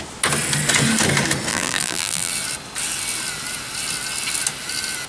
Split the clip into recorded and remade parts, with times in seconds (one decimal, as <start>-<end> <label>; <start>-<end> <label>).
0.0-1.5 recorded; 1.5-2.3 remade; 2.3-5.1 recorded